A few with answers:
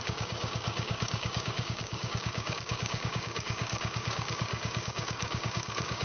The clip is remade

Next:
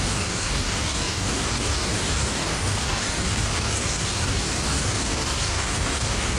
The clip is remade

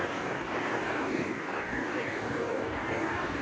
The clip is remade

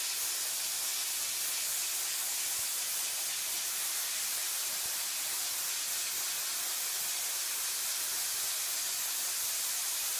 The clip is recorded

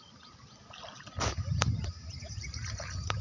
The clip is recorded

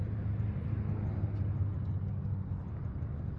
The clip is recorded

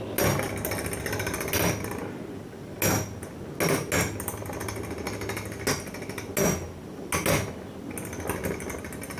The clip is recorded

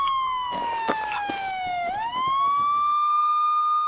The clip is remade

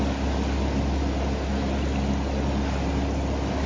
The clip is recorded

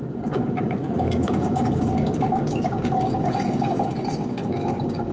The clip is remade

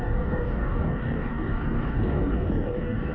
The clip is remade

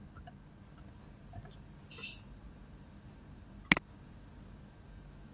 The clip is recorded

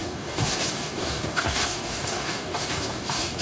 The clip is remade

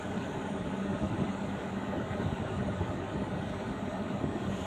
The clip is remade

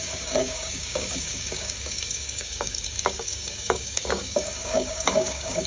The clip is remade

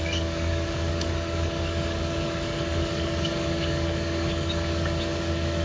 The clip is remade